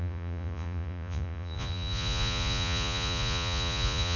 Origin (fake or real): fake